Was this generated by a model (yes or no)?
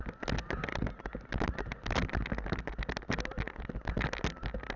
no